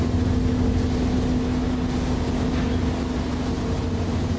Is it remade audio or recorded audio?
recorded